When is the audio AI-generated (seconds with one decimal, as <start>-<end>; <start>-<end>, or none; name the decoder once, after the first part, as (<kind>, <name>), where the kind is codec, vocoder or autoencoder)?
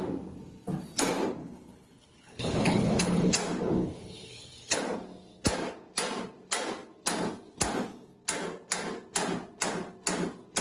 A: 1.4-3.3 (codec, HILCodec); 3.8-4.8